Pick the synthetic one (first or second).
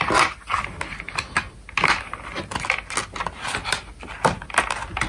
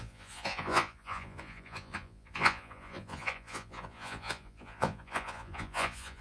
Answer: second